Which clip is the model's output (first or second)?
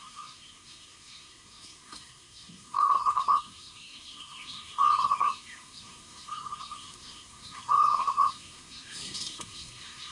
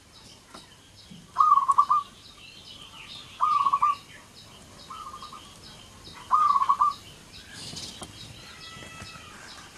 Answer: first